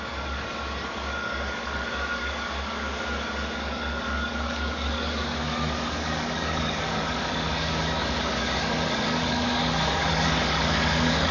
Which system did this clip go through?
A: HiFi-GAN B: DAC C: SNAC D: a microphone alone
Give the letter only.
B